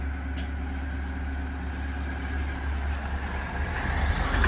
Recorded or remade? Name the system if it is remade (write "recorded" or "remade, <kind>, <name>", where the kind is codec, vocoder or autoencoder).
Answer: recorded